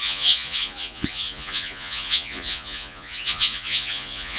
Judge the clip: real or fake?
fake